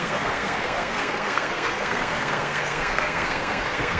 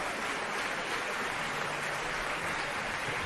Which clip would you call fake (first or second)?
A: first